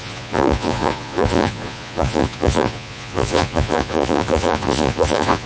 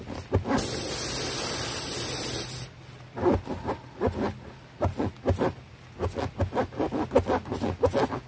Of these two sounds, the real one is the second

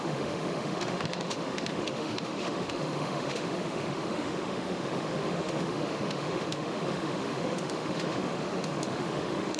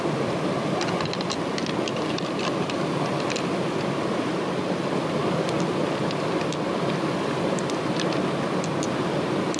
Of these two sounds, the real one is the second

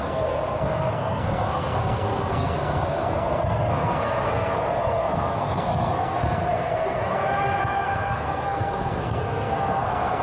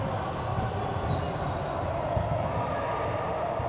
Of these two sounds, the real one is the second